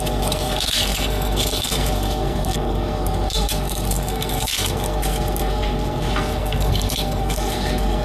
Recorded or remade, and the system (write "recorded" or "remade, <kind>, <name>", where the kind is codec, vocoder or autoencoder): remade, codec, SNAC